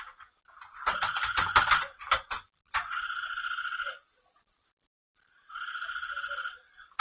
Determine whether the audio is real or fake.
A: real